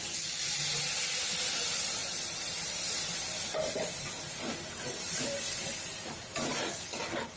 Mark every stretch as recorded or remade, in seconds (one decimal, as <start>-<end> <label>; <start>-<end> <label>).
0.0-2.0 recorded; 2.0-4.8 remade; 4.8-7.4 recorded